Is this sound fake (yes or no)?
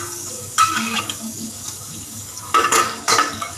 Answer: yes